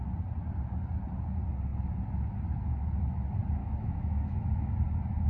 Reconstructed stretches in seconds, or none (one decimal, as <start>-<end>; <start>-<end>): 3.6-4.7